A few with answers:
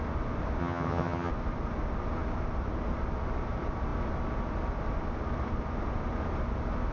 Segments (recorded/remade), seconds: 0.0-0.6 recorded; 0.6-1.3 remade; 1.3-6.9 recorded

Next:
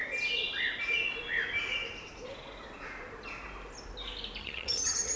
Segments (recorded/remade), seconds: 0.0-4.4 recorded; 4.4-5.2 remade

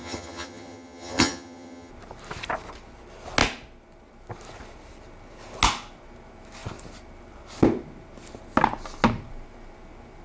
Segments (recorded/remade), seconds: 0.0-1.9 remade; 1.9-10.2 recorded